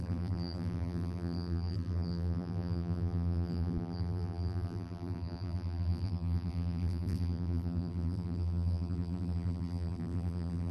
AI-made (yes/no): yes